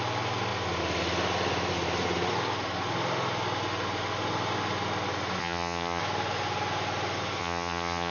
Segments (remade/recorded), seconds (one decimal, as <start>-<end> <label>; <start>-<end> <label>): 0.0-5.4 recorded; 5.4-6.0 remade; 6.0-7.4 recorded; 7.4-8.1 remade